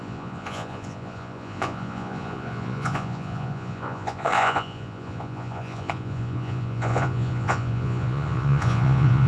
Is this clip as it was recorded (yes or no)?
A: no